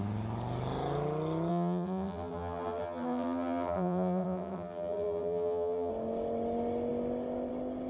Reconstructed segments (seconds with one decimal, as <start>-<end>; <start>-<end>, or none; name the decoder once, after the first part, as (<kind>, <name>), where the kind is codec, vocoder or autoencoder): 1.5-5.9 (vocoder, BigVGAN v2)